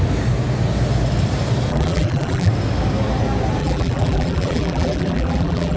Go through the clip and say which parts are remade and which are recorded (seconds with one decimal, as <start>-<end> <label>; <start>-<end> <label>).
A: 0.0-1.7 recorded; 1.7-2.5 remade; 2.5-3.6 recorded; 3.6-5.8 remade